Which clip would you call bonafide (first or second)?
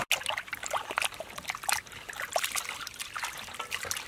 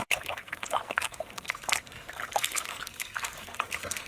first